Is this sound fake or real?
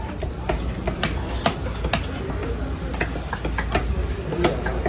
real